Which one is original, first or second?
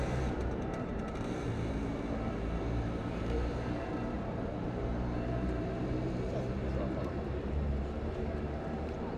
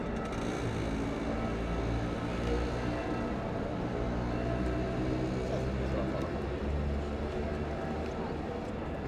second